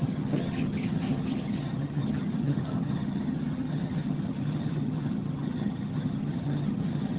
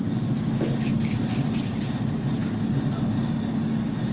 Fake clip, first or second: first